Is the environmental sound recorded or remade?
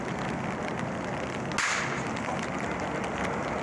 recorded